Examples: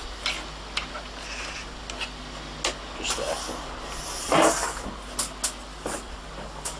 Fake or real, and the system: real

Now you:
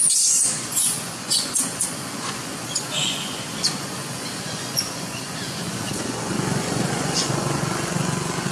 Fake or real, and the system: fake, vocoder, Vocos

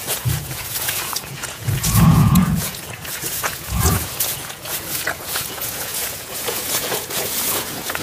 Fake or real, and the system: fake, vocoder, Vocos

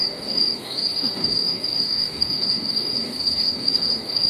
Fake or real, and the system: fake, codec, DAC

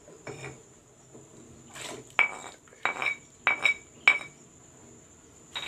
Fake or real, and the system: real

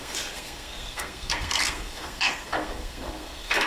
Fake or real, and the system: fake, codec, SNAC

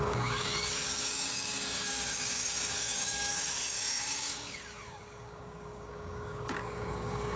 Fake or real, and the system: fake, codec, DAC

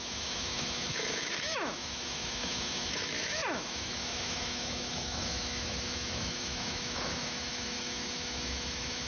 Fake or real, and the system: fake, autoencoder, DAC-VAE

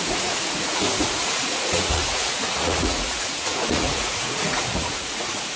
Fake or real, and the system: fake, vocoder, Vocos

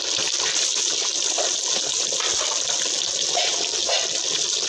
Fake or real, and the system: real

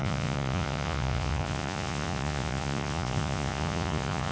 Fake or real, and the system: fake, vocoder, Vocos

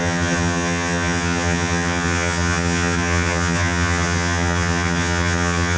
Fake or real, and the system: fake, vocoder, HiFi-GAN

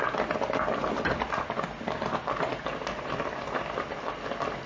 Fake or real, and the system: real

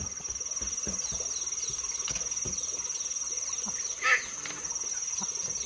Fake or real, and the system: real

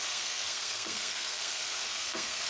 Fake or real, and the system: fake, codec, SNAC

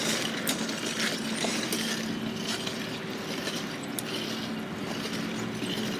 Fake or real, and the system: real